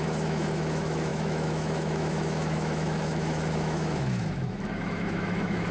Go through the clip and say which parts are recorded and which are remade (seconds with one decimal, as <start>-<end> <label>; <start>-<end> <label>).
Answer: 0.0-5.7 remade